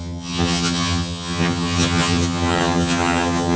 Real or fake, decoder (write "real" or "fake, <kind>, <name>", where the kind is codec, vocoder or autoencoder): fake, vocoder, HiFi-GAN